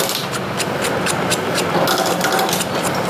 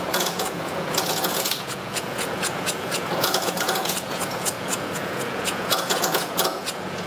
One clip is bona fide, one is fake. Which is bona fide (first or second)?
first